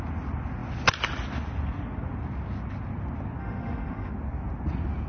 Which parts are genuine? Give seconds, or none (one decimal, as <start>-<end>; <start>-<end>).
0.0-3.4; 4.1-5.1